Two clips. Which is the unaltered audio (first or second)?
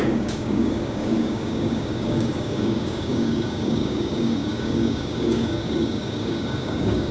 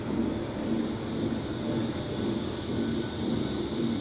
second